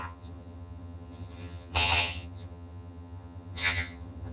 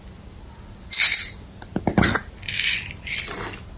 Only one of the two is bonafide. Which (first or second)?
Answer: second